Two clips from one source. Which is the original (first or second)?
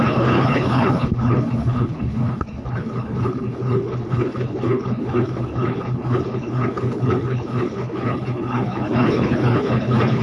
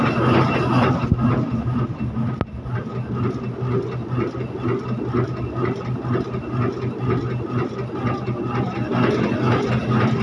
second